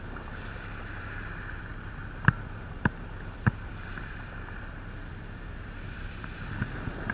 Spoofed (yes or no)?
yes